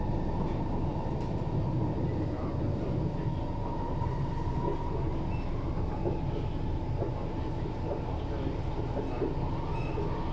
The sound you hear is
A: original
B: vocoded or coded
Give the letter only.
A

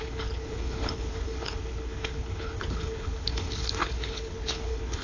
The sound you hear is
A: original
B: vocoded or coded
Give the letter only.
B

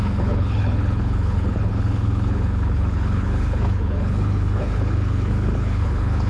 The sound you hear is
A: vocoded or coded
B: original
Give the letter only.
A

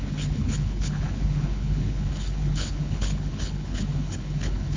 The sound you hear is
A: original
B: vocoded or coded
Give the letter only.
B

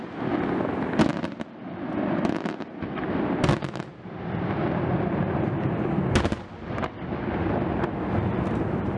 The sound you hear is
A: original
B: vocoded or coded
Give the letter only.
A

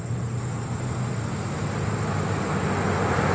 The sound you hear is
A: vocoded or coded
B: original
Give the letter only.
B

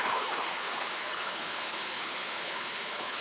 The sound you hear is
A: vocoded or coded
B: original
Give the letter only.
A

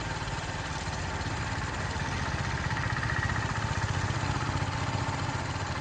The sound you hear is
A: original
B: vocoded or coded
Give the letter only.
A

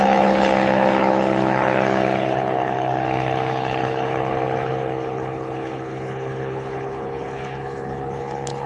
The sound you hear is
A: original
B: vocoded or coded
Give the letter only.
B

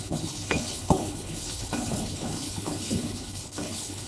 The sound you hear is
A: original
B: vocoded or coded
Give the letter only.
B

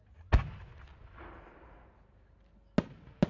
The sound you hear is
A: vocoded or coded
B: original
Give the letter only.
B